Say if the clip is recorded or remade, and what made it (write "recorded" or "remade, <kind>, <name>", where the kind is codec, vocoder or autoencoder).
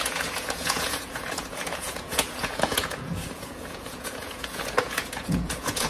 remade, vocoder, Vocos